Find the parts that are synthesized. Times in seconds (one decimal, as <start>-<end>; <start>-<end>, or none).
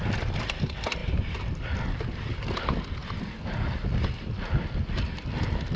none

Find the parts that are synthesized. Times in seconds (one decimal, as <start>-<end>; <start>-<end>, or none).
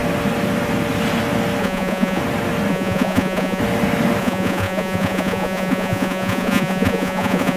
1.6-2.2; 2.7-3.6; 4.2-7.6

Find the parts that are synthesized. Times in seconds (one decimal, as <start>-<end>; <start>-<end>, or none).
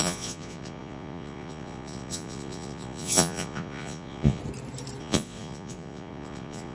0.0-4.4; 5.0-6.7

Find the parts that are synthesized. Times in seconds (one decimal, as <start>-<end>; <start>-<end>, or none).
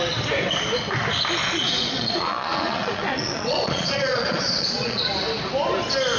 1.4-5.1